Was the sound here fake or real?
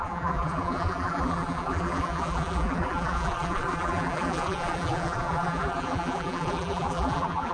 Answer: fake